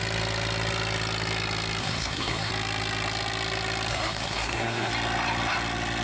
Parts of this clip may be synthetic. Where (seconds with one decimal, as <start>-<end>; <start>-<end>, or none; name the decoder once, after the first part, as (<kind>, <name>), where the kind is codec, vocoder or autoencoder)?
1.8-2.5 (codec, SNAC); 3.9-4.9